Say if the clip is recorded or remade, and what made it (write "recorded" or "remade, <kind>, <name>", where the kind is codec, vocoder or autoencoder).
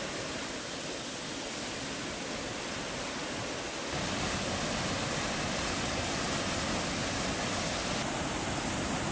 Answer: recorded